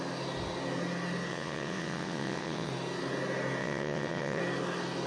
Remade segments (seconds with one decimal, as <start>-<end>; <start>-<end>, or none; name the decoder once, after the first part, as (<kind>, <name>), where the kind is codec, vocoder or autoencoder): 1.3-2.7 (vocoder, WaveNeXt); 3.6-4.4